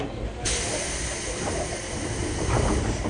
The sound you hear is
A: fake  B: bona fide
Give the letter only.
B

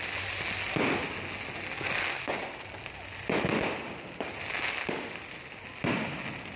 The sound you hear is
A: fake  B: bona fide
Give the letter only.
B